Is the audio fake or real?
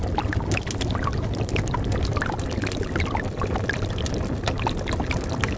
real